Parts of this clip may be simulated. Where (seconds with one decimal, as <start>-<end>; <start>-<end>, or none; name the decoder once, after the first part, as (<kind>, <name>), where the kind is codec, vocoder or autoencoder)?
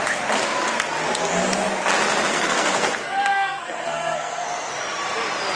2.3-4.7 (codec, SNAC)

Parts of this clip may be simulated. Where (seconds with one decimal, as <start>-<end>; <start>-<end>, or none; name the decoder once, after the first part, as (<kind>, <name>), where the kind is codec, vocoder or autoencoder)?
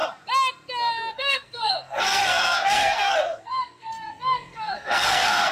1.1-5.5 (codec, SNAC)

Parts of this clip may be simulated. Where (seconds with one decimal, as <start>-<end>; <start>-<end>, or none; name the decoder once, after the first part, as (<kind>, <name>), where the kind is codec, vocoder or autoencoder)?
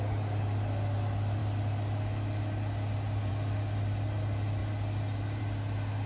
none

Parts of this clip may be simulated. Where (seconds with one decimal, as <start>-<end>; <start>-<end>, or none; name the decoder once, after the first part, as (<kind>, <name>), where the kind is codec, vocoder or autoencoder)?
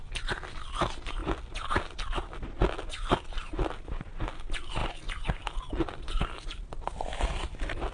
none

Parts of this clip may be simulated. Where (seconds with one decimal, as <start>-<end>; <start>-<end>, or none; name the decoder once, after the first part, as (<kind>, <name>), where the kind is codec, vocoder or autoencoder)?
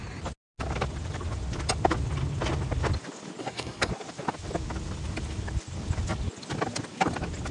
3.4-3.9 (codec, SNAC)